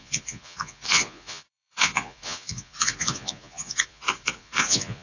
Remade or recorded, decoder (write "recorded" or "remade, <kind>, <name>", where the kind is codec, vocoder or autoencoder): remade, vocoder, Vocos